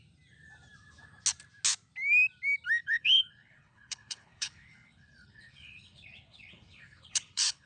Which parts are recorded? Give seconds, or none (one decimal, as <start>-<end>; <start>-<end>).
0.0-2.8